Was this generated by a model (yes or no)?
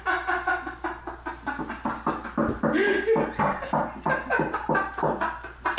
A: no